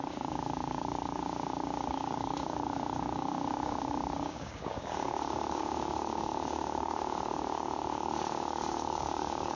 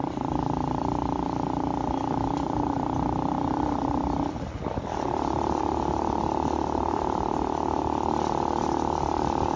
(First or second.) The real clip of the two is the second